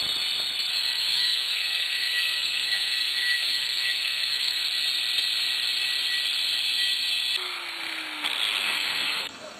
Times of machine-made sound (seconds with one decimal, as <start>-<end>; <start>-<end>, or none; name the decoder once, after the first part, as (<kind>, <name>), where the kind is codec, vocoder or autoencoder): 1.1-4.6 (codec, SNAC); 8.6-9.6